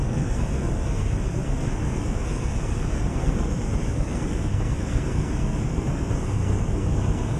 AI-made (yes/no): yes